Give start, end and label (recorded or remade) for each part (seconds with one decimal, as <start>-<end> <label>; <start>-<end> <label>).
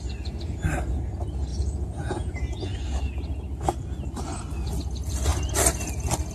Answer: 0.0-1.5 recorded; 1.5-2.8 remade; 2.8-6.3 recorded